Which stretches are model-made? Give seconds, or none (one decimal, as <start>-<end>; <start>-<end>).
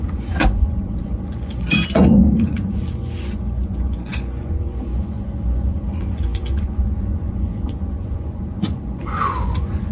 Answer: 0.0-9.9